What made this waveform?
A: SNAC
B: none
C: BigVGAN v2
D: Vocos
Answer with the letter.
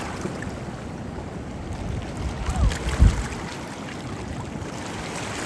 B